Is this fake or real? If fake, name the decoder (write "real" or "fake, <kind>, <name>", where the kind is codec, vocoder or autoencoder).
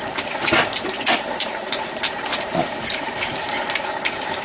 fake, vocoder, BigVGAN v2